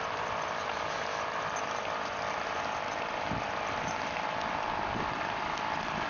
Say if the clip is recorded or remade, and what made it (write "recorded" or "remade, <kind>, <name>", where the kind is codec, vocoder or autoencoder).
recorded